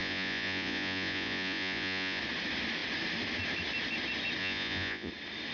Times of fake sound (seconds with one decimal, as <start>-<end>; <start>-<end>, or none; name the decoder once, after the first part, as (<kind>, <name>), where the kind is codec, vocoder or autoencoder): 0.0-2.2 (vocoder, Vocos); 4.4-5.1